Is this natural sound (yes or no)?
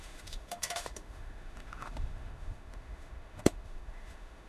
no